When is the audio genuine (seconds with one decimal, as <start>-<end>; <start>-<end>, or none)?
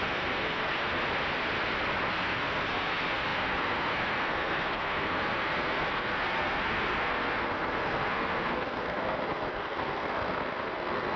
1.0-2.1